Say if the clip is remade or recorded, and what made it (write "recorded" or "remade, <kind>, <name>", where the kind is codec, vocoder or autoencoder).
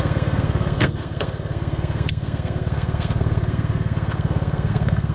remade, codec, SNAC